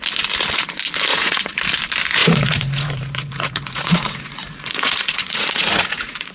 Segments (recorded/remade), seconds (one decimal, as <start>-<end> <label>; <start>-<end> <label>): 0.0-1.1 recorded; 1.1-1.6 remade; 1.6-2.2 recorded; 2.2-6.3 remade